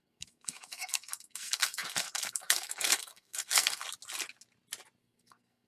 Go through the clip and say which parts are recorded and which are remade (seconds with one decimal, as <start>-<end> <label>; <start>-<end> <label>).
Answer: 0.0-3.8 remade; 3.8-5.0 recorded; 5.0-5.7 remade